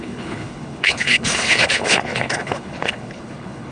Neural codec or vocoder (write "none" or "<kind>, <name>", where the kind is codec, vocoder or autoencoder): codec, HILCodec